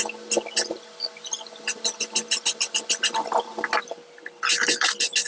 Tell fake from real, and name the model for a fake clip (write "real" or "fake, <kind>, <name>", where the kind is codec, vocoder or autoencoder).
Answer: real